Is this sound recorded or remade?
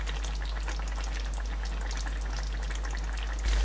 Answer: recorded